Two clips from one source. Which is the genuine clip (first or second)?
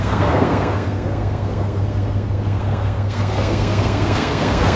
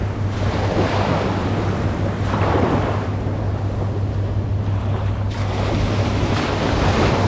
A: second